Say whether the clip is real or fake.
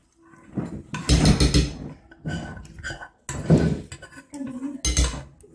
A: real